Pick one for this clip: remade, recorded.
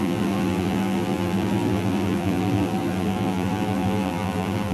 remade